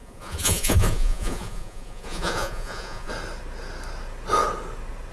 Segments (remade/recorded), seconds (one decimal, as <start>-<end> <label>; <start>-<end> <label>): 0.0-3.1 remade; 3.1-5.1 recorded